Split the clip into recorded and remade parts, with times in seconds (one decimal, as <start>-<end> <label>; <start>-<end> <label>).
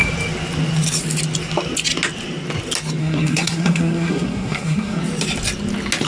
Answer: 0.0-3.0 recorded; 3.0-5.0 remade; 5.0-6.1 recorded